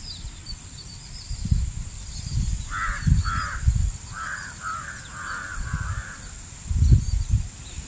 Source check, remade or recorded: recorded